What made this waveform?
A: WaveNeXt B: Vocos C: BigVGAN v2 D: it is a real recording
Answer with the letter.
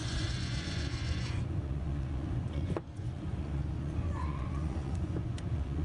B